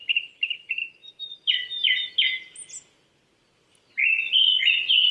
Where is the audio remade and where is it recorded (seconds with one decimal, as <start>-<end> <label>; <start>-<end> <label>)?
0.0-5.1 recorded